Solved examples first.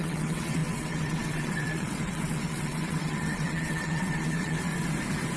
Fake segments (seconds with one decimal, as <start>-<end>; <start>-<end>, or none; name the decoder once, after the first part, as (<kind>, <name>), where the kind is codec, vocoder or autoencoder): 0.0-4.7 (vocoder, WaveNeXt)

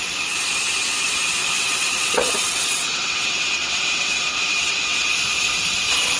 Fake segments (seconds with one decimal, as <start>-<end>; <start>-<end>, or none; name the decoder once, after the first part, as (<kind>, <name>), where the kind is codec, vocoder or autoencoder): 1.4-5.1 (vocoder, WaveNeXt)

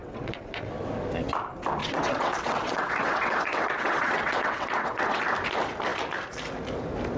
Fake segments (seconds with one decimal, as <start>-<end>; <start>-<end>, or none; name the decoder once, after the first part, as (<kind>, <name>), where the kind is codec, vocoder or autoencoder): 0.0-0.7 (vocoder, WaveNeXt); 1.8-5.2

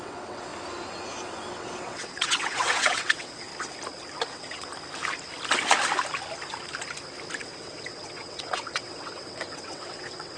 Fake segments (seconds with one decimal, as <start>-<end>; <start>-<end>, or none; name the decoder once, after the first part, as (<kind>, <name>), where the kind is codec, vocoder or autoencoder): 0.0-0.5 (vocoder, WaveNeXt); 1.5-3.5; 4.3-4.7; 7.4-10.4

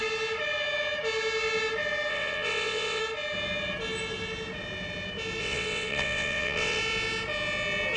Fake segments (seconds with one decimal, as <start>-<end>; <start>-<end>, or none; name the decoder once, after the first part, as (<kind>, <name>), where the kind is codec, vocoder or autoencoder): 2.1-3.0 (vocoder, WaveNeXt); 5.4-6.8

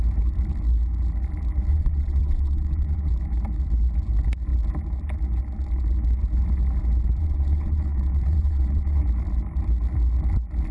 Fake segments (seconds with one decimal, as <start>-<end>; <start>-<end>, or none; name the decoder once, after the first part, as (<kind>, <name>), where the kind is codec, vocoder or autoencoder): 1.7-3.1 (vocoder, WaveNeXt); 7.2-9.0

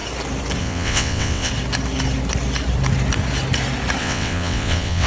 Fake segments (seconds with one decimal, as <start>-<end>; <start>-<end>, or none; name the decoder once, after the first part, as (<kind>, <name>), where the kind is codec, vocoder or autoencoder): 0.6-1.5 (vocoder, WaveNeXt); 4.0-5.1